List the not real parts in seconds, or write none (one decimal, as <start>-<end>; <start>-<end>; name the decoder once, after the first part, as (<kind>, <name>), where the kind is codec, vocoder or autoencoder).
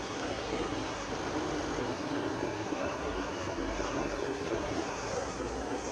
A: 0.0-1.1 (codec, SNAC); 1.8-5.9